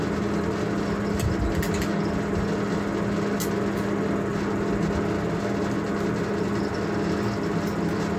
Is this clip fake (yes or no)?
no